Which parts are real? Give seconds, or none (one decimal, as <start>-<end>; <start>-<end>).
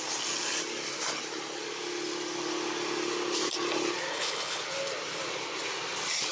0.0-4.1; 4.6-6.3